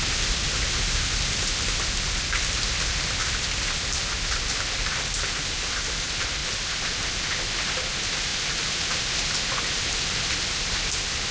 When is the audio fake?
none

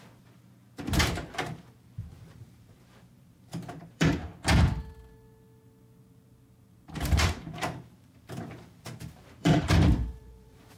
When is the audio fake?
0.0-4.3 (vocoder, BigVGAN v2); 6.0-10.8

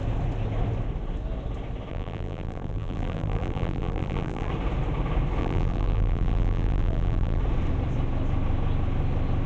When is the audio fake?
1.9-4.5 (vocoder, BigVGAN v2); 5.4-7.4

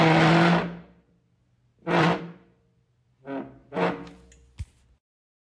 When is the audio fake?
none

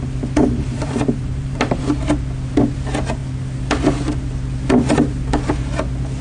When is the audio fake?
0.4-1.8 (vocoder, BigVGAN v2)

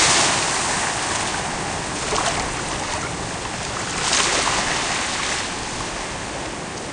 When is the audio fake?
none

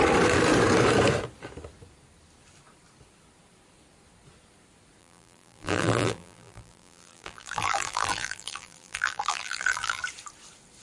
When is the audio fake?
5.0-10.0 (vocoder, BigVGAN v2)